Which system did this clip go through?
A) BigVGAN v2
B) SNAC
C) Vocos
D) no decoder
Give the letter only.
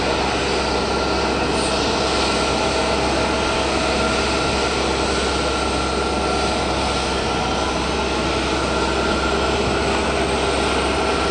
D